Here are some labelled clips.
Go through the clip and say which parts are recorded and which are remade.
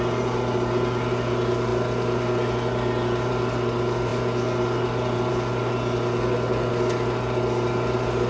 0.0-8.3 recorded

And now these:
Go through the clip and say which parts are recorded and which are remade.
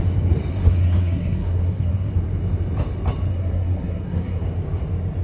0.0-0.5 recorded; 0.5-2.1 remade; 2.1-3.3 recorded; 3.3-4.4 remade; 4.4-5.2 recorded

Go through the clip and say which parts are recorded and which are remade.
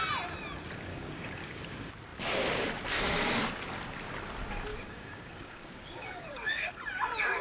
0.0-0.9 recorded; 0.9-1.6 remade; 1.6-4.7 recorded; 4.7-6.7 remade; 6.7-7.4 recorded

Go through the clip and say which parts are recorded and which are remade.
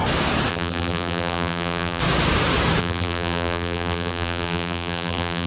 0.0-0.5 recorded; 0.5-2.0 remade; 2.0-2.8 recorded; 2.8-5.5 remade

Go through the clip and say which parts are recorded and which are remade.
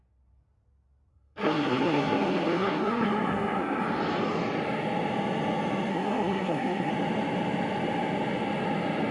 0.0-1.1 recorded; 1.1-3.8 remade; 3.8-5.9 recorded; 5.9-6.9 remade; 6.9-9.1 recorded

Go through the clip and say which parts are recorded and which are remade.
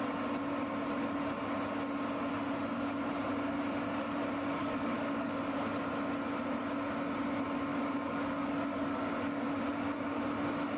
0.0-4.6 recorded; 4.6-5.4 remade; 5.4-7.7 recorded; 7.7-9.5 remade; 9.5-10.8 recorded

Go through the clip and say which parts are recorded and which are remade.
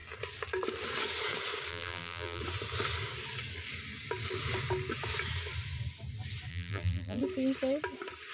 0.0-1.7 recorded; 1.7-2.4 remade; 2.4-6.5 recorded; 6.5-7.2 remade; 7.2-8.3 recorded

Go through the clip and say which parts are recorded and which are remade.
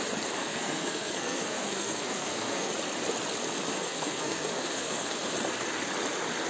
0.0-0.4 recorded; 0.4-2.7 remade; 2.7-3.7 recorded; 3.7-5.2 remade; 5.2-6.5 recorded